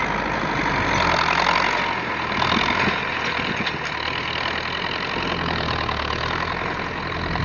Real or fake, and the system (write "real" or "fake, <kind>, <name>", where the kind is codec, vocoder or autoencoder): real